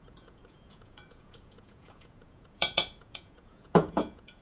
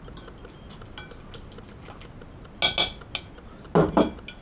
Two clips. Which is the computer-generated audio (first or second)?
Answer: first